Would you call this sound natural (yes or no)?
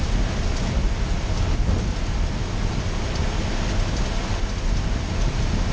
yes